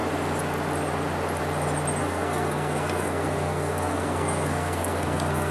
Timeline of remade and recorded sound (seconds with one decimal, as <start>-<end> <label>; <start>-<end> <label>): 0.0-2.0 recorded; 2.0-5.5 remade